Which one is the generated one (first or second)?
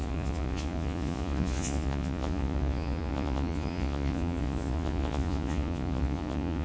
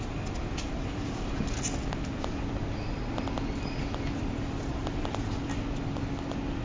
first